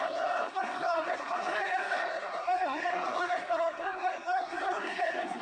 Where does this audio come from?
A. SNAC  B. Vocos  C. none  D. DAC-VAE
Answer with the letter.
A